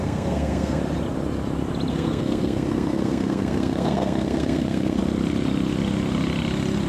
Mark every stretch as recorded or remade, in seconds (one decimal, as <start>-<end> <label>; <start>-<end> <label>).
0.0-0.8 remade; 0.8-1.9 recorded; 1.9-5.0 remade; 5.0-6.9 recorded